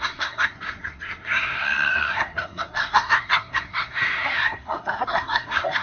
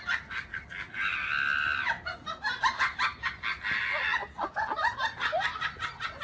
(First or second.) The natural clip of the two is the second